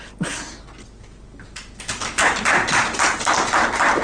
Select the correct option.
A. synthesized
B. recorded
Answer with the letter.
B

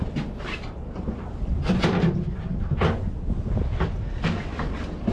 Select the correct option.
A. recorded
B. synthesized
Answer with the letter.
A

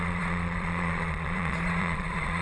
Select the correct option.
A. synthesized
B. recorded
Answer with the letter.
A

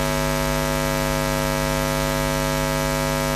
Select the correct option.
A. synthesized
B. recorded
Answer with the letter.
B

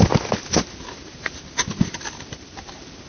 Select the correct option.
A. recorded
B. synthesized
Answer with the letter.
A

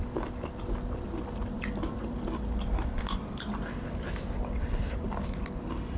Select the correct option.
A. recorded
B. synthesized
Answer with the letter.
A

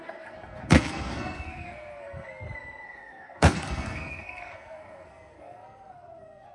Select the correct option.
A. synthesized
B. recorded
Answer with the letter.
A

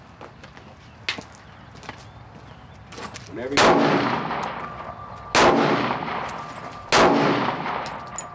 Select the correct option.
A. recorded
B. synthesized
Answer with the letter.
A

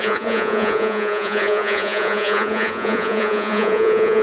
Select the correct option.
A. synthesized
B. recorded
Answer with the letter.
A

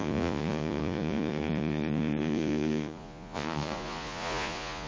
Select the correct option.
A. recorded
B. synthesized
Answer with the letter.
B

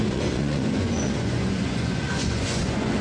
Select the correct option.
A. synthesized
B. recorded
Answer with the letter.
A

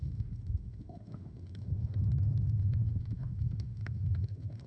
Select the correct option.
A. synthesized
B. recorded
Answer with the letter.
A